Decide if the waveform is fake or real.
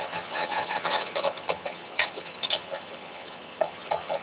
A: fake